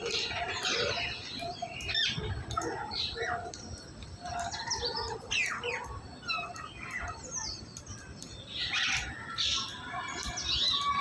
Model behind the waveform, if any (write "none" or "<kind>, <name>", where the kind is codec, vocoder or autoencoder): none